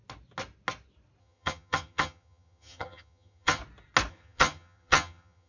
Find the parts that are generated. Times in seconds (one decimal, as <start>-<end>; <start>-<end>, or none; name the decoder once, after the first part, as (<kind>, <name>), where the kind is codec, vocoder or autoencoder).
1.2-3.6 (vocoder, HiFi-GAN); 4.1-5.5